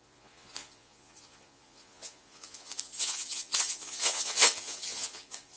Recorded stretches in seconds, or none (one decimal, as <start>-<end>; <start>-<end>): none